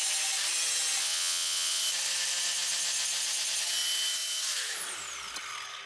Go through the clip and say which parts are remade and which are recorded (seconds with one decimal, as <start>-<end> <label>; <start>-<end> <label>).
0.0-1.0 recorded; 1.0-1.8 remade; 1.8-5.9 recorded

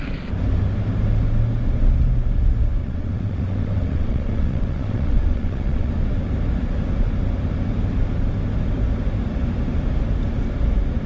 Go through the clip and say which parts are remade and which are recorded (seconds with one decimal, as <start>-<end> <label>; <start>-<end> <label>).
0.0-2.8 recorded; 2.8-5.9 remade; 5.9-11.1 recorded